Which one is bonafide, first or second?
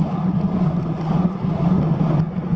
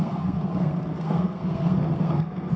first